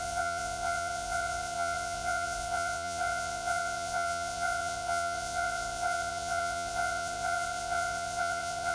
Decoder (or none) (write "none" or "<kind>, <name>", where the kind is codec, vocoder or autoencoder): vocoder, Vocos